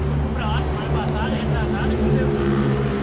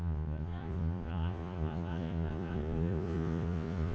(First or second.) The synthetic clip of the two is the second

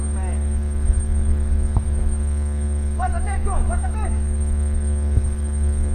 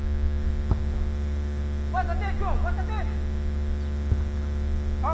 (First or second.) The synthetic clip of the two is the first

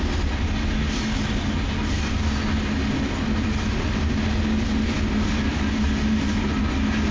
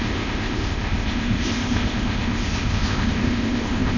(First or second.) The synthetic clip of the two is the second